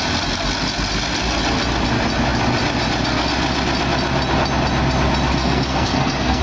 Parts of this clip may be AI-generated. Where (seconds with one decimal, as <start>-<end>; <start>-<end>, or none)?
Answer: 5.4-6.4